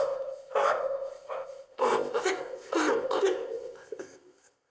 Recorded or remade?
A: remade